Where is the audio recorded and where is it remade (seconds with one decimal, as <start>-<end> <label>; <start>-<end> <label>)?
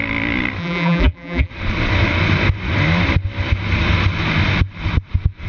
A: 0.0-0.6 recorded; 0.6-1.5 remade; 1.5-5.5 recorded